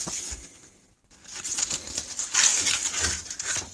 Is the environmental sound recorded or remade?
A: recorded